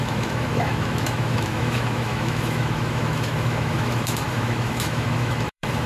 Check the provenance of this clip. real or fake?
fake